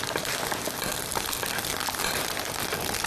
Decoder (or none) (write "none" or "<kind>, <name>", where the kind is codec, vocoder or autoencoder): none